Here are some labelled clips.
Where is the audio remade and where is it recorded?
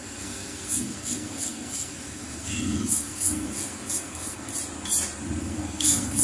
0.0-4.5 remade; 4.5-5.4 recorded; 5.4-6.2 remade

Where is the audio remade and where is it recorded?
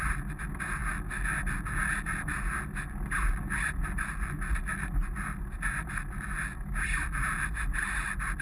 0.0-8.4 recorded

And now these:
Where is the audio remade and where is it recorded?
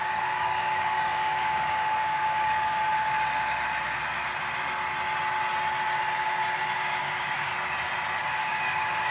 0.0-2.8 remade; 2.8-6.8 recorded; 6.8-7.5 remade; 7.5-8.2 recorded; 8.2-9.1 remade